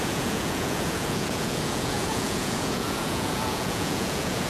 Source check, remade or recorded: remade